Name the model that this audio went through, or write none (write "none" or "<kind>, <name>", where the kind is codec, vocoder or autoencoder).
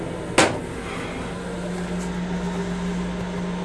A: none